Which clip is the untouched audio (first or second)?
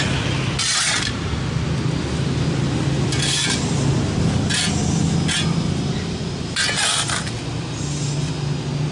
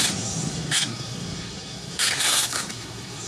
first